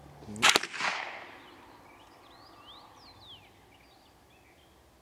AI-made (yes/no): no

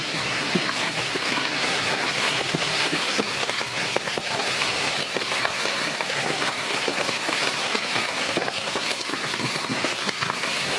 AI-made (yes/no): yes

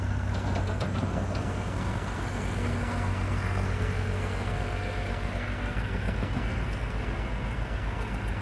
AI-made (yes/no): yes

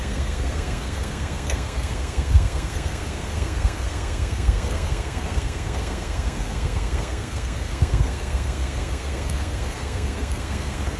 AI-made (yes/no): yes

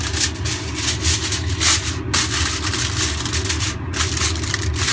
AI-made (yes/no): no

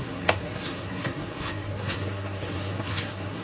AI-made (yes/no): yes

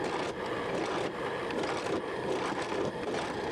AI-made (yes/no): no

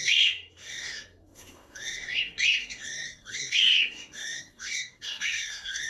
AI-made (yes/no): yes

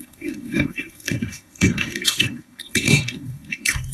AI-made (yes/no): yes